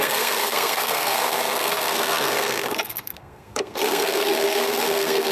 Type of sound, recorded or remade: remade